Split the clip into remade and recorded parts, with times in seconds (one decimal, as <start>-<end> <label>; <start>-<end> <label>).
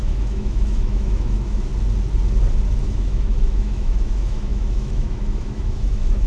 0.0-1.7 remade; 1.7-2.8 recorded; 2.8-6.3 remade